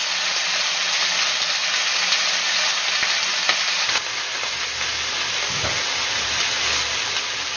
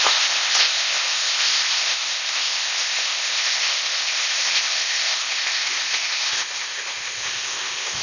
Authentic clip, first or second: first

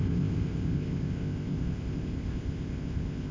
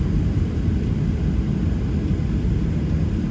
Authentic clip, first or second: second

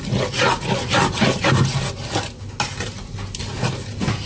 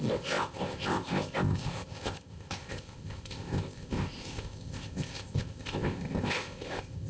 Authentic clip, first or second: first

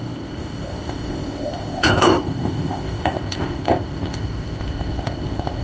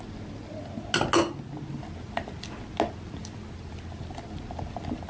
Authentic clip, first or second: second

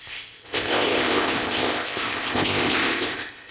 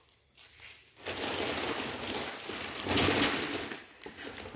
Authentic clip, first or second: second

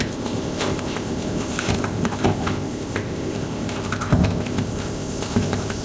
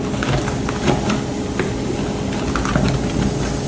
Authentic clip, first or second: second